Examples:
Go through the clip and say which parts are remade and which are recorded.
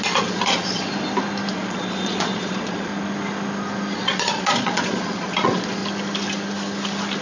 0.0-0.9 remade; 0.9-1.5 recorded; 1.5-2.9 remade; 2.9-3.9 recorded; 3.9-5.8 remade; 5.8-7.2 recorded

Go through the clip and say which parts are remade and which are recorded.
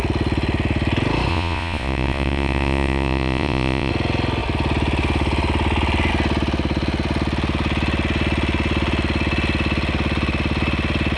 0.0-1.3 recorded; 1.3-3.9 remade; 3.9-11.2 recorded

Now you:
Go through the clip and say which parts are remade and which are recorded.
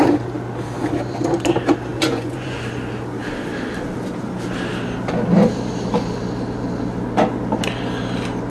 0.0-1.9 recorded; 1.9-2.6 remade; 2.6-8.5 recorded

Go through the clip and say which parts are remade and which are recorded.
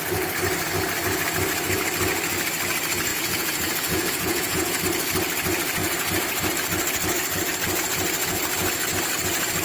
0.0-3.1 recorded; 3.1-4.8 remade; 4.8-9.6 recorded